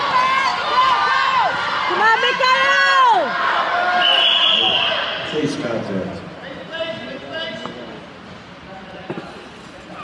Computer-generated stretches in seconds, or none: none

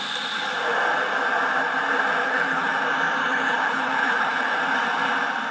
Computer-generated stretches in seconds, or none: 2.2-2.7 (codec, HILCodec); 3.2-4.6

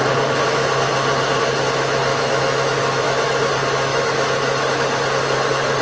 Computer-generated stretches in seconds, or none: 2.1-3.4 (autoencoder, DAC-VAE); 3.9-4.8

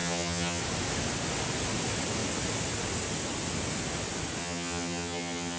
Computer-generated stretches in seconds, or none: 0.0-0.6 (vocoder, HiFi-GAN); 4.4-5.6

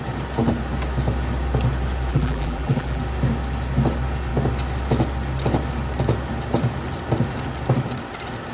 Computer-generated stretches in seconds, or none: 2.1-3.0 (vocoder, BigVGAN v2)